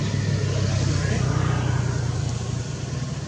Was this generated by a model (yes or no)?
no